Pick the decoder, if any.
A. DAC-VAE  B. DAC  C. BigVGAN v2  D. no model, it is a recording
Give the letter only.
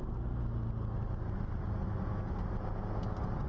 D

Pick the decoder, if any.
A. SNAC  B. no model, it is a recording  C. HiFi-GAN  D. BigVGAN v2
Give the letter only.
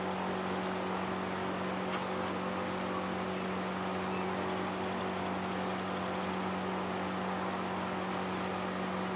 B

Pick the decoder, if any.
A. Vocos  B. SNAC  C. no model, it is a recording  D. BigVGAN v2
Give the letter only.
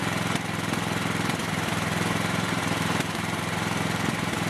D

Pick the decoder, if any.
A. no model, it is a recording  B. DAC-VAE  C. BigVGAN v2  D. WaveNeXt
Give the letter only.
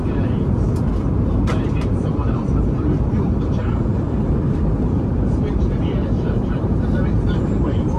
C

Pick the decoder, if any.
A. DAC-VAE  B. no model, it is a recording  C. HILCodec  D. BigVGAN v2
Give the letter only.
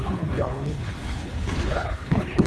C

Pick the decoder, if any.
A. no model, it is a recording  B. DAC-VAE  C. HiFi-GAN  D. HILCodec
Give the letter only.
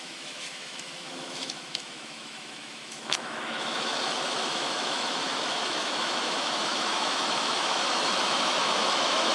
B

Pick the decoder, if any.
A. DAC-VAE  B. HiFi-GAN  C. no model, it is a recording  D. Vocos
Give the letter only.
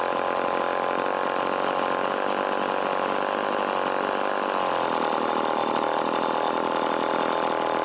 C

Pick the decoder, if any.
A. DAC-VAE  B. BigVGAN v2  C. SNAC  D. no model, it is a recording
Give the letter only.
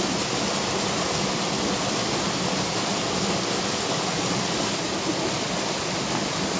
D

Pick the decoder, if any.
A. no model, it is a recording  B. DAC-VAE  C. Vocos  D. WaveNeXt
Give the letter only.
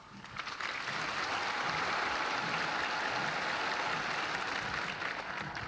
A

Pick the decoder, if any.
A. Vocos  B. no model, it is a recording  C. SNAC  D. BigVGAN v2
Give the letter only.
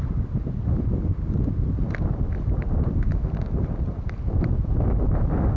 B